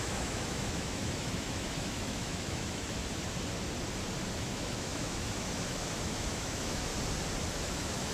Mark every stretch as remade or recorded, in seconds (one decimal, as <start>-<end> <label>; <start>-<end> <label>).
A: 0.0-3.0 remade; 3.0-4.3 recorded; 4.3-6.9 remade; 6.9-7.5 recorded; 7.5-8.1 remade